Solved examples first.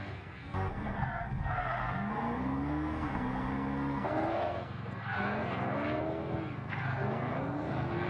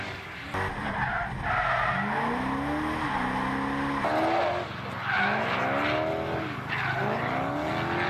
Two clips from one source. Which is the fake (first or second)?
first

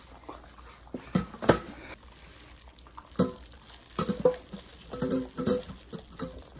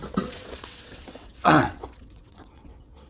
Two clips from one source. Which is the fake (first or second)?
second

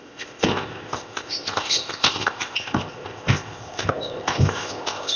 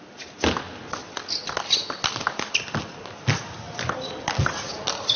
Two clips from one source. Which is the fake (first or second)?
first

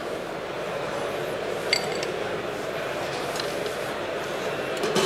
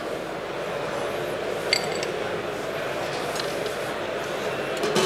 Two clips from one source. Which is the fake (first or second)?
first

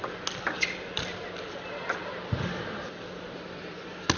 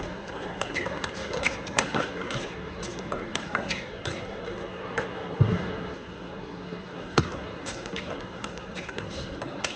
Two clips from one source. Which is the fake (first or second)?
second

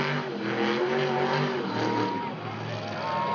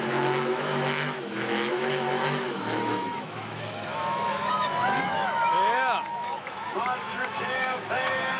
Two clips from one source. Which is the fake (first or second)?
second